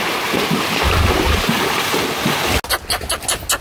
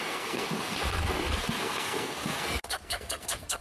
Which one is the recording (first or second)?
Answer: first